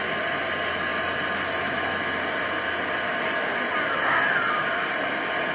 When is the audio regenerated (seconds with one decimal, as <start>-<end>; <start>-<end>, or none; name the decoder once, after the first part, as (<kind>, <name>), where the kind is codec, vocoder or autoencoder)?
none